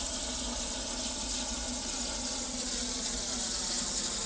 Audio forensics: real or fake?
real